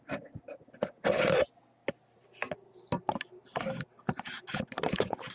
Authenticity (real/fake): real